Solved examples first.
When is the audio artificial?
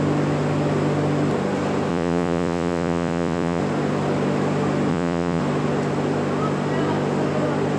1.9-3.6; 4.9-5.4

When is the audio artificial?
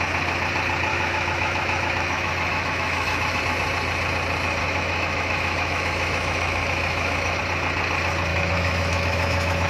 0.9-3.4; 4.6-7.4; 8.3-9.7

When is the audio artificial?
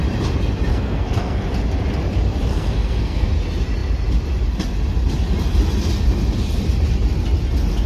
0.7-1.4; 2.5-3.3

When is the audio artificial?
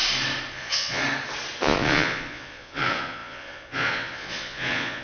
0.5-1.0; 1.6-5.0